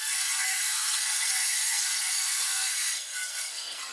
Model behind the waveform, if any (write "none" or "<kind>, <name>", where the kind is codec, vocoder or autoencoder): codec, SNAC